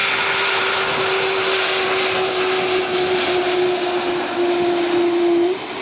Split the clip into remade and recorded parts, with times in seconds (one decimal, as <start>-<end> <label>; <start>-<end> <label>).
0.0-5.8 recorded